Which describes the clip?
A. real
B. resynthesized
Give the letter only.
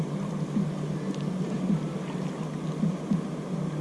A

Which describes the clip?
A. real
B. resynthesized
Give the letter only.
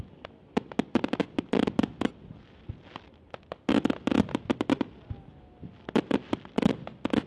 A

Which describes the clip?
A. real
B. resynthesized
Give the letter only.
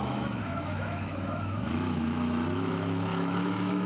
B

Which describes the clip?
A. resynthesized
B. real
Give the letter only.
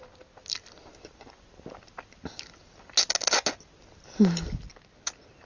B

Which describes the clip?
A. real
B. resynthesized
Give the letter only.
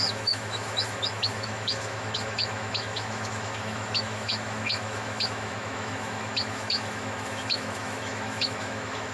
B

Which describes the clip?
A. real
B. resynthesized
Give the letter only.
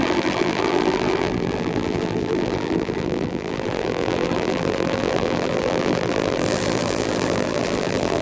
B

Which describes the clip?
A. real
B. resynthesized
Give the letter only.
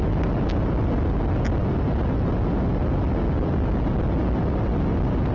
A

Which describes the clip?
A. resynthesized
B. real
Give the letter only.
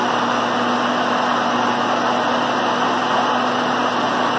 B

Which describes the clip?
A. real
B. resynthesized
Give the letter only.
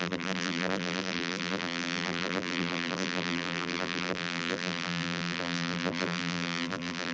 B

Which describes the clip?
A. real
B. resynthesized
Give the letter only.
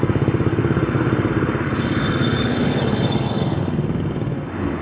B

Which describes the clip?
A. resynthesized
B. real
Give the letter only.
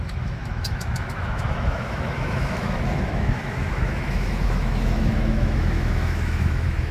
A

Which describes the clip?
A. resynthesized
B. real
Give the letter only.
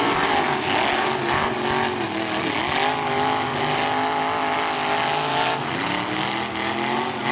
B